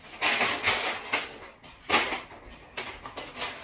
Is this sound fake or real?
real